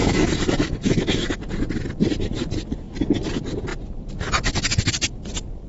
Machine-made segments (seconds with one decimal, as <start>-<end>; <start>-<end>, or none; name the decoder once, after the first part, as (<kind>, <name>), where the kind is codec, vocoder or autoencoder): 0.0-1.4 (autoencoder, DAC-VAE)

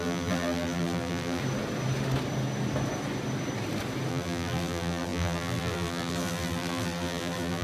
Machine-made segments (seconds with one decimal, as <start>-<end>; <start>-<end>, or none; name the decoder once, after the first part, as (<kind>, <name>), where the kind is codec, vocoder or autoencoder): 0.0-1.4 (vocoder, BigVGAN v2); 4.1-7.6

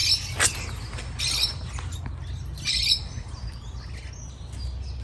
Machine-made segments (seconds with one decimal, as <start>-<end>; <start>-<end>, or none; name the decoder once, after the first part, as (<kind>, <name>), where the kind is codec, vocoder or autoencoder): none

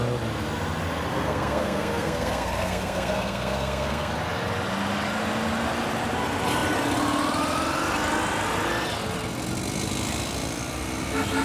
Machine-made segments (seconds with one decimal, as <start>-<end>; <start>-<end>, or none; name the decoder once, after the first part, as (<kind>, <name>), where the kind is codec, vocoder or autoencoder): 1.1-4.1 (codec, SNAC)

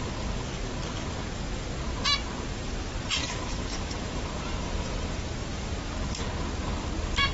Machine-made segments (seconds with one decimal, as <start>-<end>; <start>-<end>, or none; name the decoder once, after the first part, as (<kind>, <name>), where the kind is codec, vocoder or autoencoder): 2.5-5.9 (vocoder, BigVGAN v2)

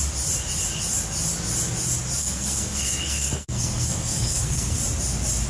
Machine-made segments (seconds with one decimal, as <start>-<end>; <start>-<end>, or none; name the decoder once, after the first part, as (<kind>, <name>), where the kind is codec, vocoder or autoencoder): 2.2-4.8 (codec, SNAC)